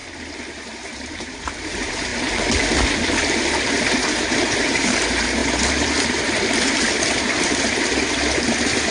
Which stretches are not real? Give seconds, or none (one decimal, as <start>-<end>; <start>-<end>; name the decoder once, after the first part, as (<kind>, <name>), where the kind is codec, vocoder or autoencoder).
0.6-2.1 (vocoder, BigVGAN v2); 3.7-5.4; 7.4-8.9